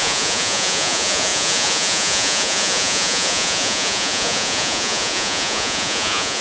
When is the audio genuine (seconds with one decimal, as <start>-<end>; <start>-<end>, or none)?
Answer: none